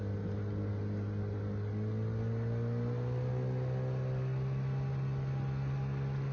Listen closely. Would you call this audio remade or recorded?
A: recorded